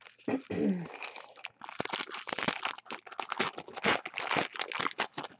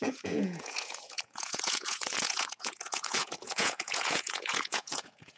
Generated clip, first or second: second